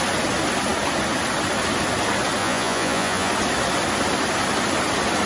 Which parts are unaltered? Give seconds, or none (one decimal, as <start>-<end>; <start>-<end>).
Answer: 0.0-2.4; 3.3-5.3